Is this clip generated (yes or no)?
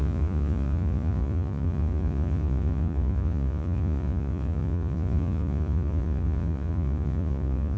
yes